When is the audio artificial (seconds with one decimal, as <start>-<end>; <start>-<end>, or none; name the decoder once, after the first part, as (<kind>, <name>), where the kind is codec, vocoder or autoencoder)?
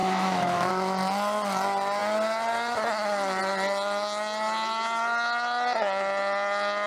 0.0-0.7 (autoencoder, DAC-VAE)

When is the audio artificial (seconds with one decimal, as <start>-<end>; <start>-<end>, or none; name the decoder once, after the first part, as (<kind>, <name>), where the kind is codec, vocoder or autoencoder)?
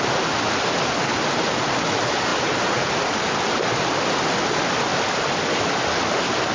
none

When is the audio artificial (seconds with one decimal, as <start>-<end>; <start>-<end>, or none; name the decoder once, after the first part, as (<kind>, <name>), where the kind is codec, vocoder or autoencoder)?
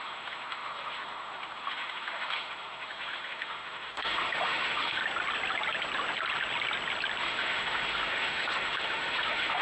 0.0-5.0 (autoencoder, DAC-VAE); 7.2-9.6